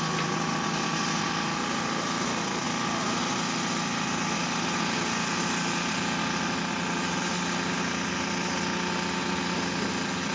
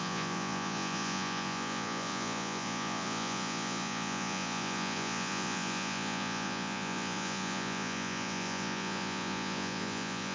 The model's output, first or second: second